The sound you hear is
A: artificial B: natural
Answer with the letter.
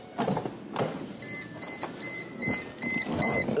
B